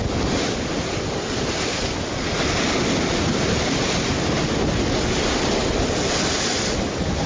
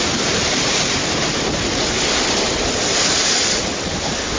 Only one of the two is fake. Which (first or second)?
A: second